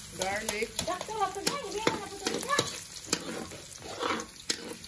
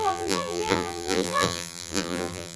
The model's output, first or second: second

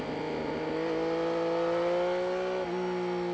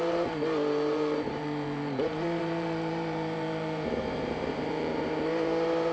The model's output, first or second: second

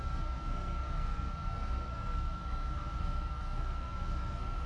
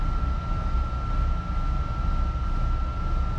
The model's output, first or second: first